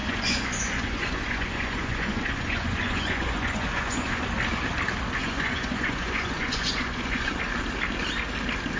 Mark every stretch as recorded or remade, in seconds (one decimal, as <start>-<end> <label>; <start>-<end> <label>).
0.0-4.2 remade; 4.2-5.2 recorded; 5.2-7.3 remade; 7.3-8.8 recorded